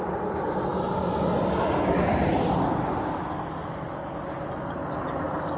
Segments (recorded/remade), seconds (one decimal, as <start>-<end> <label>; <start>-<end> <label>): 0.0-5.6 recorded

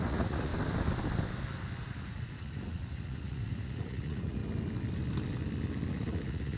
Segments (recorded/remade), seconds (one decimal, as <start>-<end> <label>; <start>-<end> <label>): 0.0-0.5 remade; 0.5-2.0 recorded; 2.0-4.4 remade; 4.4-5.9 recorded; 5.9-6.6 remade

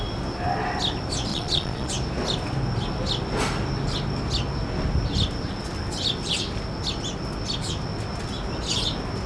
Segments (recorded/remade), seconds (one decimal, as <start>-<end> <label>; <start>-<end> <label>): 0.0-1.3 recorded; 1.3-1.9 remade; 1.9-9.3 recorded

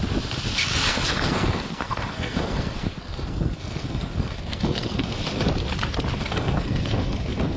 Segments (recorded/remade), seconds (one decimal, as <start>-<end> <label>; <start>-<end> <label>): 0.0-0.6 recorded; 0.6-5.2 remade; 5.2-6.2 recorded; 6.2-7.6 remade

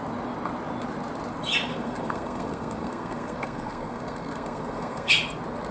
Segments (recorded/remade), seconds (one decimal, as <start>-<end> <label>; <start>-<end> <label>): 0.0-1.7 recorded; 1.7-5.1 remade; 5.1-5.7 recorded

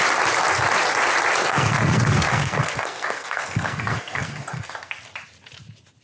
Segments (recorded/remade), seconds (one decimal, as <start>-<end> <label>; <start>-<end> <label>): 0.0-1.4 recorded; 1.4-5.0 remade; 5.0-6.0 recorded

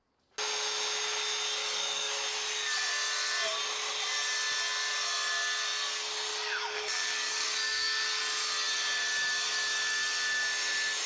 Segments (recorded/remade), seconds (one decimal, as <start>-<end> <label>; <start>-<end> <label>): 0.0-1.6 recorded; 1.6-2.1 remade; 2.1-6.3 recorded; 6.3-8.2 remade; 8.2-11.1 recorded